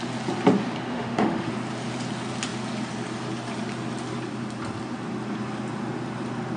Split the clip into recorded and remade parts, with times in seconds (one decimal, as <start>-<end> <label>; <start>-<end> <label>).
0.0-0.9 recorded; 0.9-1.5 remade; 1.5-6.6 recorded